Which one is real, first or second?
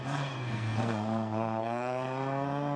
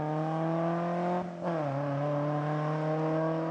second